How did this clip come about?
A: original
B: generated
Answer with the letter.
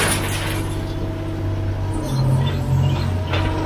A